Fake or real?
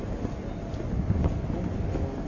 real